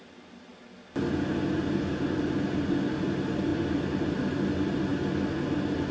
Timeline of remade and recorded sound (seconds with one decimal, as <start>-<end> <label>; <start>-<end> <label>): 0.0-5.9 recorded